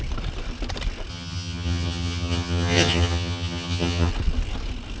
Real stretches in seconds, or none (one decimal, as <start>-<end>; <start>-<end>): 0.0-1.1; 4.1-5.0